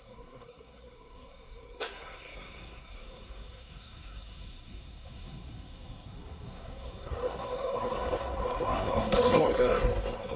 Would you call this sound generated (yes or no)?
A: yes